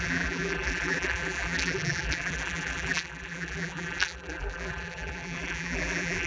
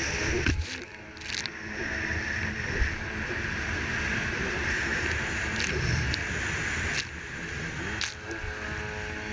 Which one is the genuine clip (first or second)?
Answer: second